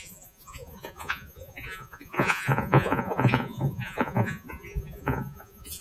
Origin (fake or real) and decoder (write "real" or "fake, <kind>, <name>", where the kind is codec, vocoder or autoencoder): fake, vocoder, Vocos